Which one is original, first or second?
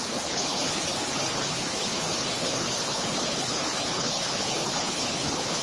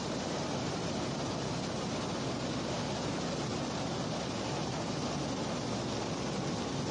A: second